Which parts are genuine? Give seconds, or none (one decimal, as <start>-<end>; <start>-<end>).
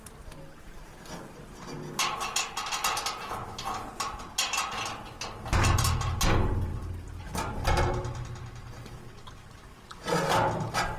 0.0-11.0